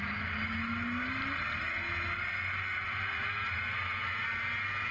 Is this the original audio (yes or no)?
yes